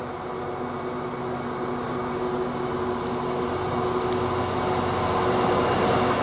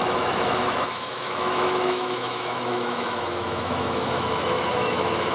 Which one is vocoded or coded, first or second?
second